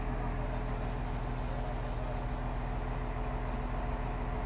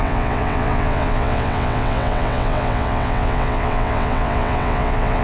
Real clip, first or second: first